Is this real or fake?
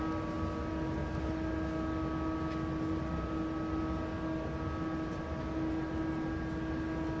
real